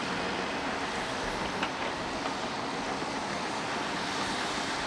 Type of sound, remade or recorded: recorded